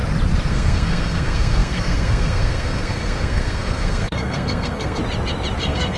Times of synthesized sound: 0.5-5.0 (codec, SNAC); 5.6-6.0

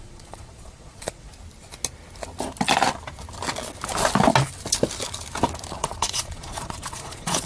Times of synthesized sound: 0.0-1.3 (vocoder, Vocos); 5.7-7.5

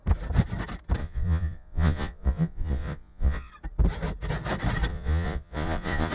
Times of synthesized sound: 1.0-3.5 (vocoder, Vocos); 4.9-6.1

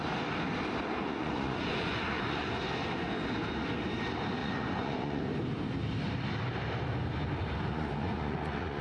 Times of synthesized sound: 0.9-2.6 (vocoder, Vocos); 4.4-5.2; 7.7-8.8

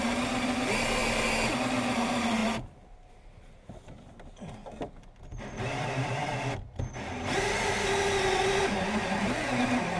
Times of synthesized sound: 0.0-2.4 (vocoder, BigVGAN v2); 3.1-4.6; 5.5-6.2; 8.6-10.0

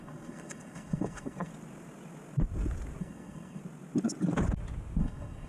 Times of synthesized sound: 0.0-1.5 (codec, SNAC); 3.0-3.6; 5.0-5.5

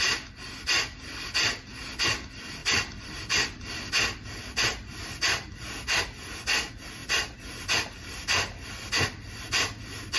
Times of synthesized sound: 2.6-3.9 (vocoder, BigVGAN v2)